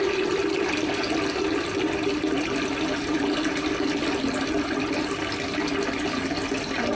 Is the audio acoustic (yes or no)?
yes